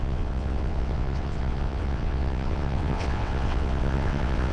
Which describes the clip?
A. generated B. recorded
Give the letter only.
A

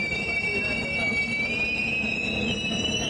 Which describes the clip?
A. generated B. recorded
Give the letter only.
B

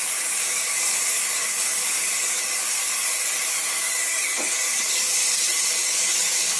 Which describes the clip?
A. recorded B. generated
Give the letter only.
B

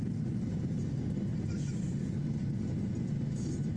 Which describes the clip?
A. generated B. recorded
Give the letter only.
B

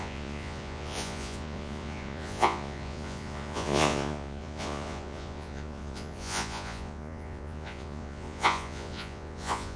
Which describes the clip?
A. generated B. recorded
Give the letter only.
A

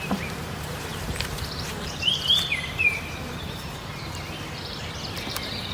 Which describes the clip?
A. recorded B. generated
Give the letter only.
B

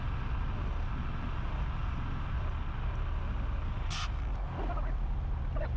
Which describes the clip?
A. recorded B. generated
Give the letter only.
A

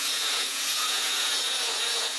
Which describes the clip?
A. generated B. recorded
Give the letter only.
A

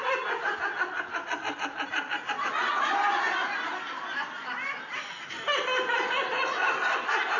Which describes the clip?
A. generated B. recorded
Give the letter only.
B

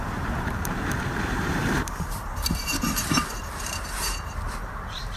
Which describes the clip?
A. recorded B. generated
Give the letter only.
B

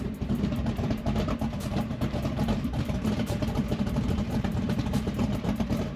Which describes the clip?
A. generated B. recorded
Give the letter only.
A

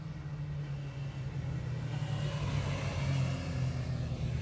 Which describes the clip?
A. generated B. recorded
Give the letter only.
B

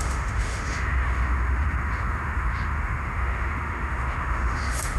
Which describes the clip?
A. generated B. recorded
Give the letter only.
A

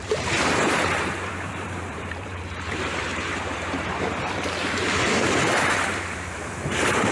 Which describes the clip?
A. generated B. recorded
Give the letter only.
A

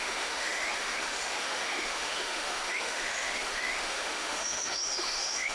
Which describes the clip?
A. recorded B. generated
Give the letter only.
B